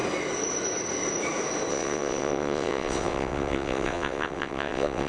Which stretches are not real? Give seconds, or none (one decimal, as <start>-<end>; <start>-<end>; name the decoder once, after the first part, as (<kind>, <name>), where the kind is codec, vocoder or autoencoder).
1.7-5.1 (vocoder, WaveNeXt)